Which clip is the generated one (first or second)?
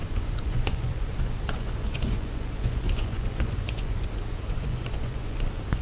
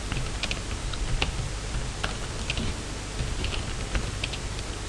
first